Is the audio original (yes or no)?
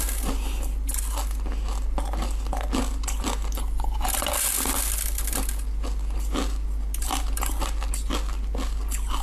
yes